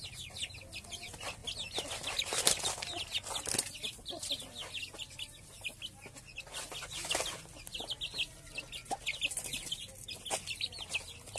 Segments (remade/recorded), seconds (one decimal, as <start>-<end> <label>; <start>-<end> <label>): 0.0-11.4 recorded